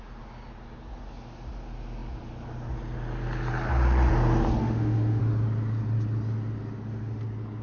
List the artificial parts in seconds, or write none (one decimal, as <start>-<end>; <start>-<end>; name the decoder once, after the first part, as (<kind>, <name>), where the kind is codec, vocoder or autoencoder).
4.6-5.2 (autoencoder, DAC-VAE)